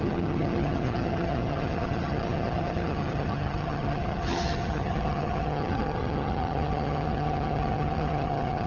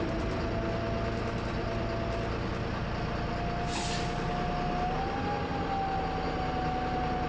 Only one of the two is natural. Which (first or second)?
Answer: second